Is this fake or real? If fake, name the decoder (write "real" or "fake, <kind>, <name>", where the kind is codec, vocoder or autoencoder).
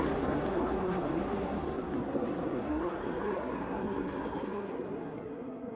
fake, codec, SNAC